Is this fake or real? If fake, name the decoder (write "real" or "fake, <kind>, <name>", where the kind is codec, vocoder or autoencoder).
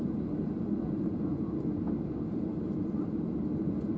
real